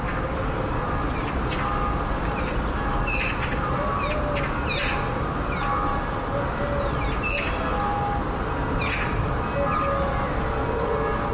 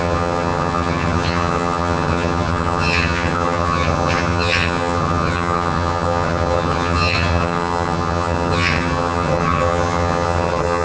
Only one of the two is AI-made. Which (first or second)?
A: second